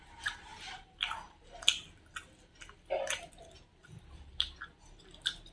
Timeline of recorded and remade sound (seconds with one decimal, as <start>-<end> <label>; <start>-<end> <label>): 0.0-0.5 recorded; 0.5-1.4 remade; 1.4-3.8 recorded; 3.8-4.6 remade; 4.6-5.5 recorded